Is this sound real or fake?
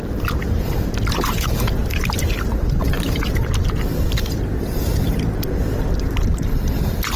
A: fake